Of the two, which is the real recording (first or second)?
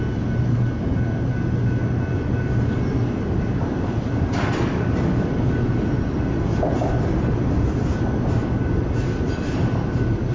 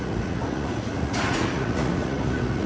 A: first